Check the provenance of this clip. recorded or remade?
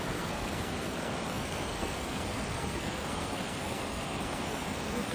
remade